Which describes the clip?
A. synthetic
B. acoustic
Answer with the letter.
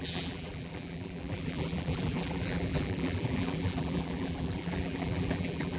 A